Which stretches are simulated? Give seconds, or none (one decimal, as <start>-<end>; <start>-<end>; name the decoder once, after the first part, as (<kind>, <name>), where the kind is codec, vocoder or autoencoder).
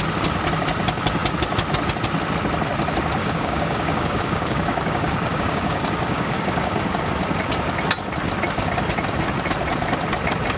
3.2-7.1 (codec, DAC)